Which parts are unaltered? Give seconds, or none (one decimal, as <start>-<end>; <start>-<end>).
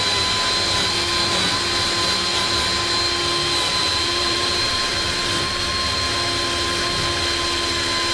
0.0-3.8; 5.7-8.1